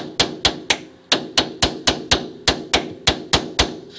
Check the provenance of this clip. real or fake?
real